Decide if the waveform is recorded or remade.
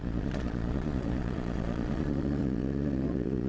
remade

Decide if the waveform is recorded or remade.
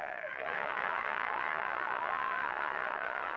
remade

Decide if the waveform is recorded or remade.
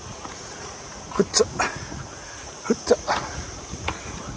remade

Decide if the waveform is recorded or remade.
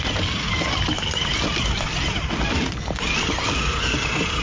recorded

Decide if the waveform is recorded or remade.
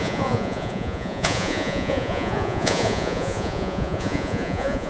remade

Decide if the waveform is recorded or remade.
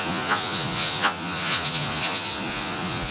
remade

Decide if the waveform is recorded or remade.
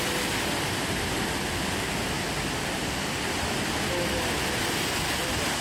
recorded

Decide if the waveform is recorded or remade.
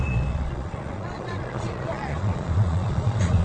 remade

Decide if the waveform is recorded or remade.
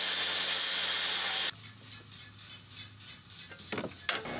recorded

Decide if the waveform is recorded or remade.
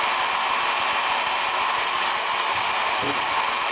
recorded